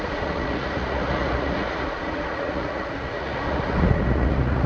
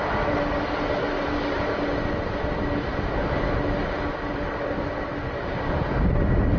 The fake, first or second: first